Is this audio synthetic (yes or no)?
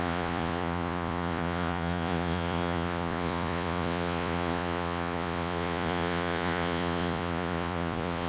yes